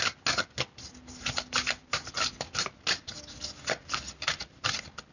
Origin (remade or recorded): recorded